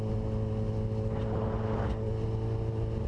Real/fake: real